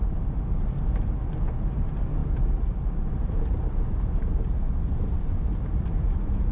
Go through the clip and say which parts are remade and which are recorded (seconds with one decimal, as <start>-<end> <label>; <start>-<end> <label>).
0.0-6.5 recorded